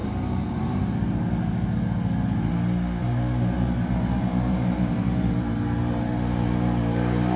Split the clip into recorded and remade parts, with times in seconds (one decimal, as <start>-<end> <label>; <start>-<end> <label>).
0.0-1.1 remade; 1.1-3.0 recorded; 3.0-7.4 remade